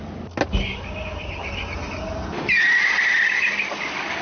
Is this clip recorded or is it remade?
recorded